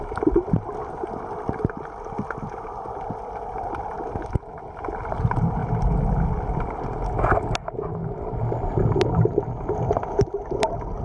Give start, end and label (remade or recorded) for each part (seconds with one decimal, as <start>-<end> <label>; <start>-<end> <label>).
0.0-11.0 recorded